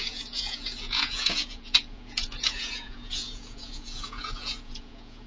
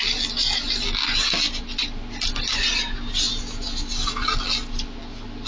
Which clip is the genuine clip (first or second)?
second